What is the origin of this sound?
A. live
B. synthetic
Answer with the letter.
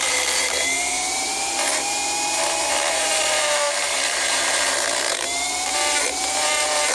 B